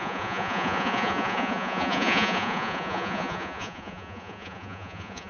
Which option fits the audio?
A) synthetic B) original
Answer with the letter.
A